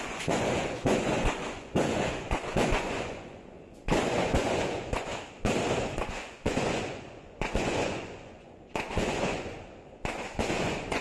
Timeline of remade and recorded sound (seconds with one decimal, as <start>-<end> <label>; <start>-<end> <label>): 0.0-5.1 remade; 5.1-5.8 recorded; 5.8-11.0 remade